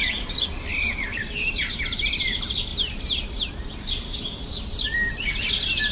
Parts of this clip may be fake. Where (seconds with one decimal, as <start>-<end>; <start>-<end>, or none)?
none